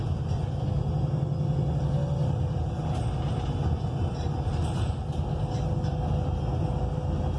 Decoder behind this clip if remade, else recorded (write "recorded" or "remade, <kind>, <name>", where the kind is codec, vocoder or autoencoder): recorded